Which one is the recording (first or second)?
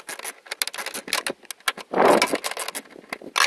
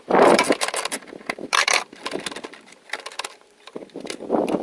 first